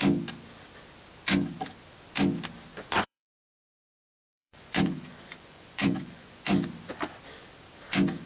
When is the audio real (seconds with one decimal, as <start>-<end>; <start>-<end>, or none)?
0.0-2.7; 6.4-8.3